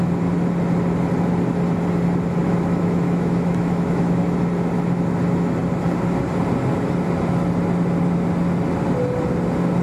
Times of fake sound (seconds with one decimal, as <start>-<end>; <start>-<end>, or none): 2.4-4.2